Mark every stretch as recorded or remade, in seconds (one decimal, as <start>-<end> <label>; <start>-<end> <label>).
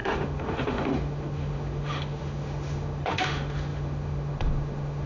0.0-5.1 remade